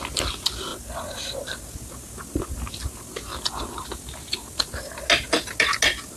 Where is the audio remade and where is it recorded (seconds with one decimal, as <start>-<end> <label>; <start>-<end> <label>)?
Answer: 0.0-6.2 recorded